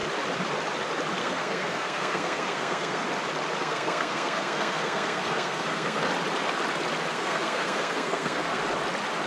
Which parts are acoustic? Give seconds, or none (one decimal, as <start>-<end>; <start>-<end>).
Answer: 0.0-1.2; 3.0-3.6; 6.1-7.1; 8.6-9.3